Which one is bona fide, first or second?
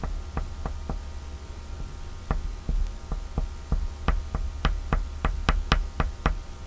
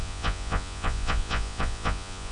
first